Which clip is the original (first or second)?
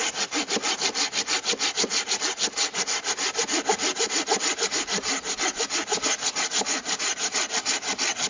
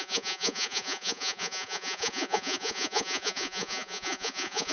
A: first